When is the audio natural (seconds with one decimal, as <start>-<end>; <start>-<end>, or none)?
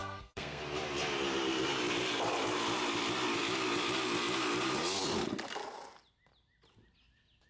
0.6-7.5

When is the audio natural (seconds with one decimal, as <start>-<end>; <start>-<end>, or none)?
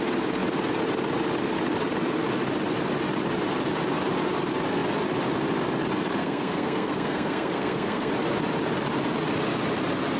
0.0-6.2; 8.1-10.2